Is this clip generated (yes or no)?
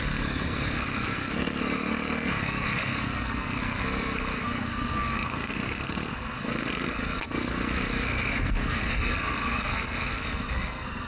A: yes